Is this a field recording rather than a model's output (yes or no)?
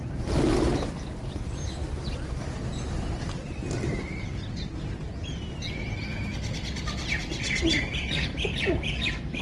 yes